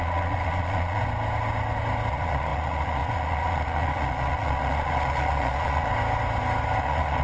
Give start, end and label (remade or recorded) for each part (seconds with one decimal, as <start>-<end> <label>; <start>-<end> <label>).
0.0-1.0 remade; 1.0-2.1 recorded; 2.1-5.9 remade; 5.9-6.8 recorded; 6.8-7.2 remade